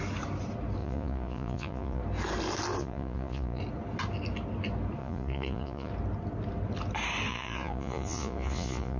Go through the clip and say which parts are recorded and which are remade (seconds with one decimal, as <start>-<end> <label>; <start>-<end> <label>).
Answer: 0.0-0.8 recorded; 0.8-2.0 remade; 2.0-2.8 recorded; 2.8-3.6 remade; 3.6-5.0 recorded; 5.0-5.9 remade; 5.9-7.3 recorded; 7.3-9.0 remade